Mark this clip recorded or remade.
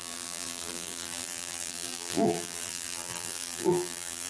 remade